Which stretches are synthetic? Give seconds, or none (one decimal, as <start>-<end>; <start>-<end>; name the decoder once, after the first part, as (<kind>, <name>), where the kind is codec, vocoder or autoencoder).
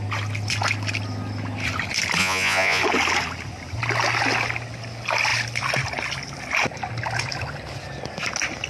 2.2-2.8 (vocoder, Vocos)